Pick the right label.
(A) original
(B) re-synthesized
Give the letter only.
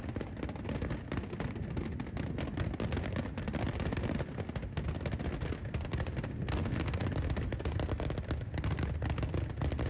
A